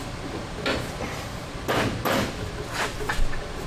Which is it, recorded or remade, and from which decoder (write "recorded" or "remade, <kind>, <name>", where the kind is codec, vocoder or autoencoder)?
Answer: recorded